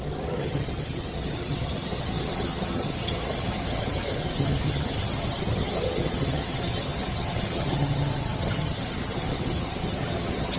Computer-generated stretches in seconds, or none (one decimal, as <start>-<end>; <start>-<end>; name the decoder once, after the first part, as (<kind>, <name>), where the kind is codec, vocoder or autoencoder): 0.0-10.6 (vocoder, HiFi-GAN)